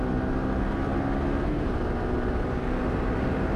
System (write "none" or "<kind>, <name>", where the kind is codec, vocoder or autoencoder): none